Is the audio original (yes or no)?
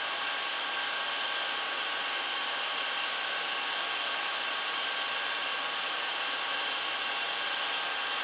yes